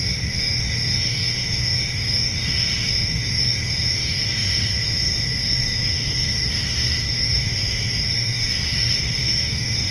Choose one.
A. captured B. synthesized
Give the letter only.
B